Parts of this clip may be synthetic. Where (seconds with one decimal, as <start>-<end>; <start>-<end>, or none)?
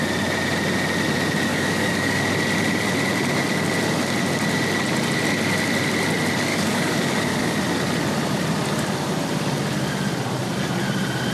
1.5-2.2; 6.5-7.6